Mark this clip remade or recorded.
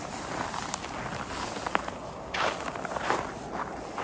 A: recorded